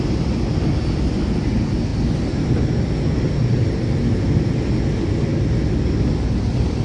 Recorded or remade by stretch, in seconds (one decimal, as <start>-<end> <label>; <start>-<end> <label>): 0.0-6.8 recorded